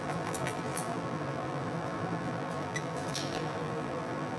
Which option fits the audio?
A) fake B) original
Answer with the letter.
A